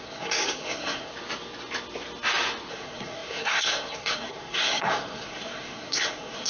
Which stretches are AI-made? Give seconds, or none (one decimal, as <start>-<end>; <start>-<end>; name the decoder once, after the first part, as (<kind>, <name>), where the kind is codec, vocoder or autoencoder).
0.0-1.1 (codec, SNAC); 2.7-6.5